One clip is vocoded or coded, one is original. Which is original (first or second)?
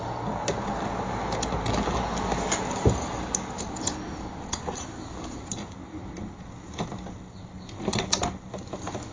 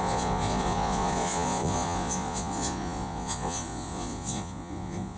first